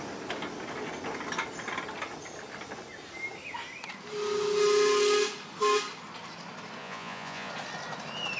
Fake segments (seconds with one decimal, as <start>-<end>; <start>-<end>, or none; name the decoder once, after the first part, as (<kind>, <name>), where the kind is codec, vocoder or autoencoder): 6.8-7.5 (vocoder, Vocos)